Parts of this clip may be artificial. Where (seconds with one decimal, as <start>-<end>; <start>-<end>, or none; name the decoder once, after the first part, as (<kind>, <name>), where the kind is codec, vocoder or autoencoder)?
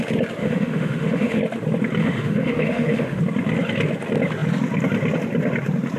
0.4-1.4 (autoencoder, DAC-VAE); 2.0-3.2